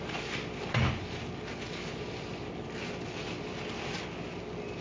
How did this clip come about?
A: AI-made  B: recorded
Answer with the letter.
B